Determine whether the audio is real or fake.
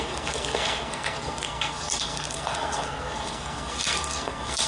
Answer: fake